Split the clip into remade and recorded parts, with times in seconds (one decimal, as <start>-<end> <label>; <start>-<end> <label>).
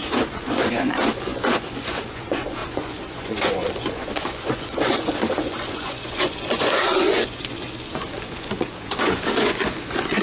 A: 0.0-10.2 remade